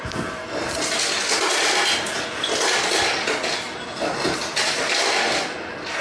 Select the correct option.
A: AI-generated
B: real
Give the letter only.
B